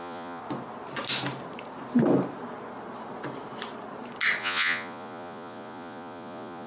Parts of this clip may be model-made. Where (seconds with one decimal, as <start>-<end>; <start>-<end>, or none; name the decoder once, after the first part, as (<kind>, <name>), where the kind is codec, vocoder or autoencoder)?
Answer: 0.0-0.4 (vocoder, Vocos); 4.4-6.7